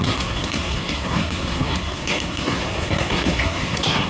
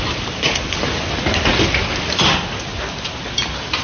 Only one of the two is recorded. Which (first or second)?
second